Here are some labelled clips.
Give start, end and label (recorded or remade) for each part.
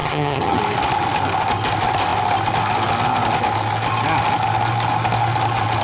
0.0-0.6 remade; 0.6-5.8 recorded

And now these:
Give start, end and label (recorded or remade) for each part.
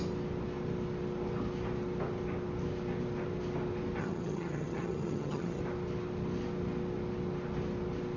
0.0-4.0 recorded; 4.0-5.6 remade; 5.6-8.2 recorded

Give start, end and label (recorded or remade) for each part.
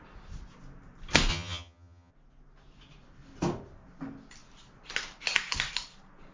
0.0-1.3 recorded; 1.3-2.1 remade; 2.1-6.3 recorded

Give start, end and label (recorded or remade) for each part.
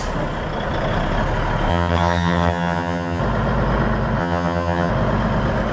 0.0-1.7 recorded; 1.7-3.2 remade; 3.2-4.2 recorded; 4.2-4.9 remade; 4.9-5.7 recorded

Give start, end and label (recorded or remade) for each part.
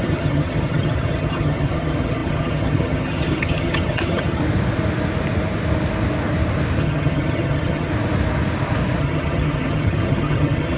0.0-4.4 remade; 4.4-6.8 recorded; 6.8-7.9 remade; 7.9-9.0 recorded; 9.0-10.8 remade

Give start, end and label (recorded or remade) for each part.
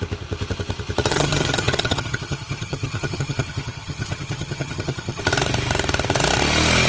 0.0-1.1 recorded; 1.1-5.2 remade; 5.2-6.9 recorded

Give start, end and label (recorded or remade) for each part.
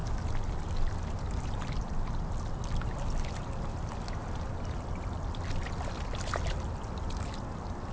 0.0-7.9 recorded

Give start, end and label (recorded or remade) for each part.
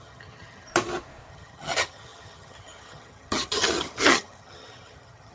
0.0-0.7 remade; 0.7-1.3 recorded; 1.3-5.3 remade